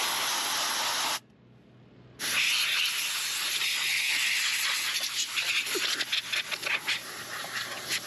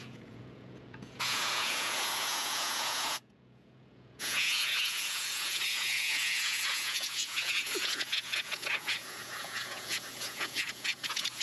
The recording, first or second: first